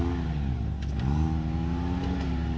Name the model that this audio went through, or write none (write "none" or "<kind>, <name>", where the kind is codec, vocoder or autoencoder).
none